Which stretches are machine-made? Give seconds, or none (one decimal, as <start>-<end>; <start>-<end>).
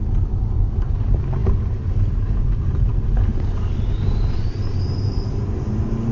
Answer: none